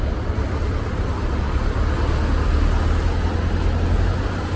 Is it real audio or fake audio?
real